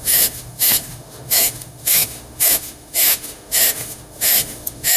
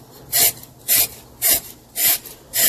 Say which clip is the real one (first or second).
second